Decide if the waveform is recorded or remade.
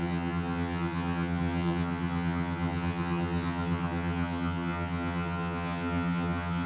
remade